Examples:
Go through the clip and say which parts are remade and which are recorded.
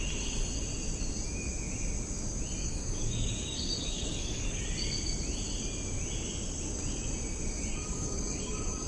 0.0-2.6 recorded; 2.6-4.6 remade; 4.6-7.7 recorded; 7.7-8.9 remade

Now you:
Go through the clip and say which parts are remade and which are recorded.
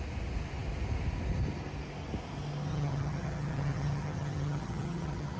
0.0-2.7 recorded; 2.7-5.4 remade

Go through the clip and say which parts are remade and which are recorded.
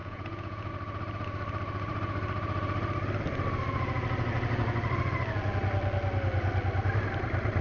0.0-0.7 remade; 0.7-7.6 recorded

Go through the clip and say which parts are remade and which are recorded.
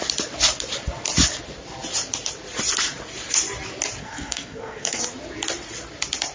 0.0-4.0 recorded; 4.0-5.0 remade; 5.0-6.3 recorded